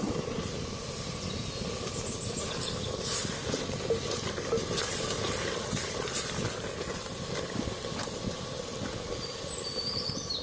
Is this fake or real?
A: real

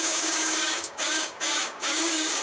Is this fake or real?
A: fake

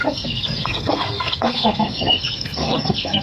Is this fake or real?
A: fake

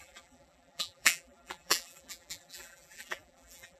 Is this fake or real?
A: fake